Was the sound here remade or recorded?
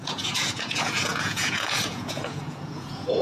remade